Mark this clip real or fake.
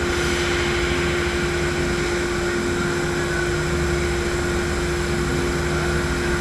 real